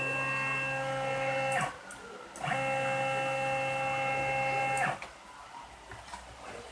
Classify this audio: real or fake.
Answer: real